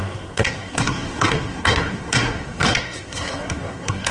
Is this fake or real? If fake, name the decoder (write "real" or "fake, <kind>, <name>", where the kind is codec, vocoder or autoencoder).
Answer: fake, codec, SNAC